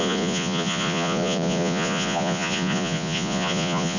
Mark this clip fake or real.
fake